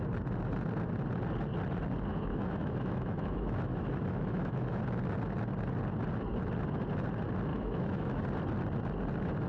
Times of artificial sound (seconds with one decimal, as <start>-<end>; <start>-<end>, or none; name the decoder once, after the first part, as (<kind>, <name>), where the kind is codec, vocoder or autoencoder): 2.1-4.8 (autoencoder, DAC-VAE); 7.5-8.2